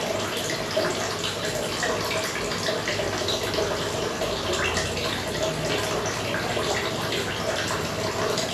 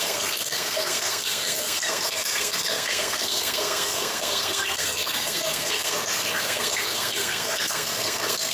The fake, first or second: second